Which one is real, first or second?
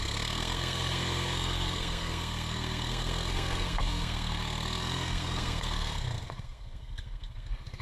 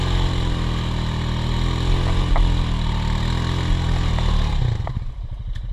second